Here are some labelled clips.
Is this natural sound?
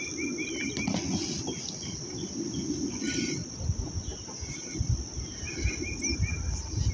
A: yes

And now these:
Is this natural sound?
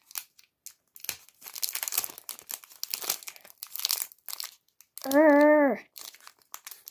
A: yes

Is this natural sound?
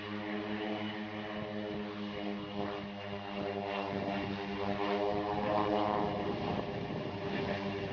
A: yes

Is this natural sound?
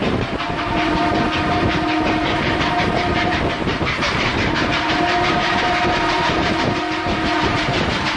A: no